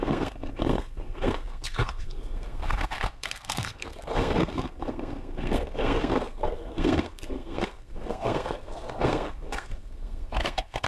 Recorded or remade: remade